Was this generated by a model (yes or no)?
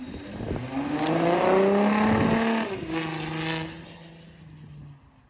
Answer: no